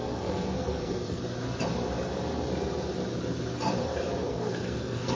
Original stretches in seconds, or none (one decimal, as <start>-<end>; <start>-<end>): 1.2-4.3